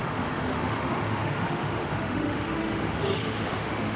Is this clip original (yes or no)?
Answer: no